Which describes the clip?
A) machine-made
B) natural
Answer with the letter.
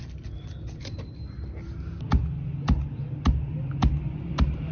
B